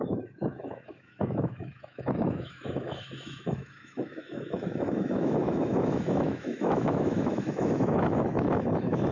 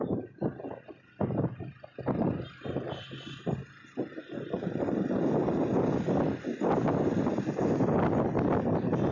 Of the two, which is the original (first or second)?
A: second